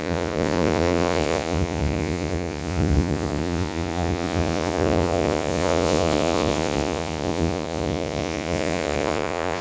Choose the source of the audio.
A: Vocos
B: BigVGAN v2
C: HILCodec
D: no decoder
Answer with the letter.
A